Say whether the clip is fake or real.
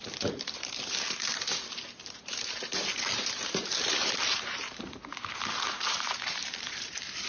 fake